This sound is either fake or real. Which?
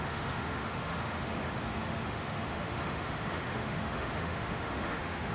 fake